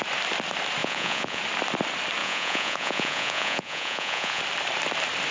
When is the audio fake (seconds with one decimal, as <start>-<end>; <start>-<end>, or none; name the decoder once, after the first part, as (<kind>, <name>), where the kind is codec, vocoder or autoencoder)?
0.8-1.4 (vocoder, Vocos); 2.2-4.4